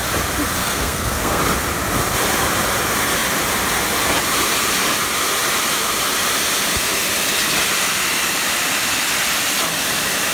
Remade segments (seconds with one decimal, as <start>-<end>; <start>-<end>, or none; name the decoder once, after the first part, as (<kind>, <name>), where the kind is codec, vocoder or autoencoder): 0.6-1.4 (codec, SNAC)